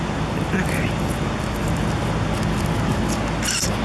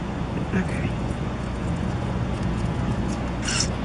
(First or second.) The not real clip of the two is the second